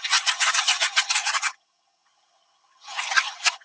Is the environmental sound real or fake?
fake